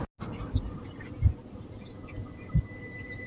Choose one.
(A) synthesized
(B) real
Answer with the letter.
B